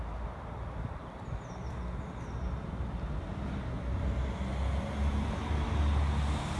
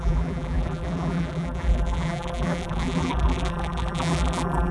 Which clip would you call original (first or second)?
first